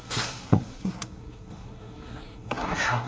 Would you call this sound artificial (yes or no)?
yes